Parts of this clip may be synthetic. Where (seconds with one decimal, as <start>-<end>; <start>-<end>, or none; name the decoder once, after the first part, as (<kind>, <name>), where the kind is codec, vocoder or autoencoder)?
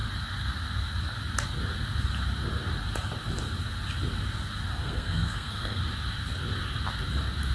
4.8-5.8 (codec, SNAC)